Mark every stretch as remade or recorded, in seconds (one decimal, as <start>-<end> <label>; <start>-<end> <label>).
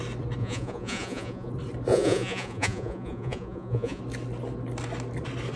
0.0-0.4 recorded; 0.4-1.5 remade; 1.5-1.9 recorded; 1.9-4.0 remade; 4.0-5.6 recorded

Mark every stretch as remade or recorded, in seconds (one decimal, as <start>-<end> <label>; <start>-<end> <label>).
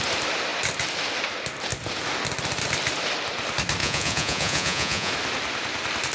0.0-3.8 recorded; 3.8-5.1 remade; 5.1-6.1 recorded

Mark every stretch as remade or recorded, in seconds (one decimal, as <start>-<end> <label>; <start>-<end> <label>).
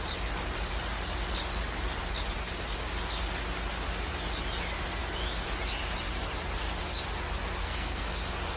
0.0-7.6 recorded; 7.6-8.2 remade; 8.2-8.6 recorded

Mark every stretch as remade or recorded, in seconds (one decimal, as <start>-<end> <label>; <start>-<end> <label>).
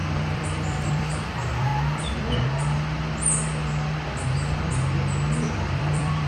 0.0-1.7 remade; 1.7-5.5 recorded; 5.5-6.3 remade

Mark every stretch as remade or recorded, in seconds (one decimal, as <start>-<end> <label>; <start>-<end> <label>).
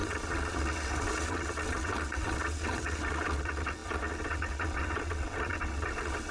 0.0-6.3 remade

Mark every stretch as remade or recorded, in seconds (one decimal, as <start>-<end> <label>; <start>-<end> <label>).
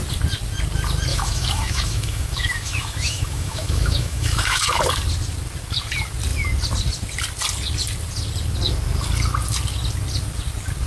0.0-1.1 recorded; 1.1-4.8 remade; 4.8-10.9 recorded